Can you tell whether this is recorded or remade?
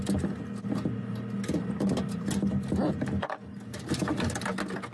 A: recorded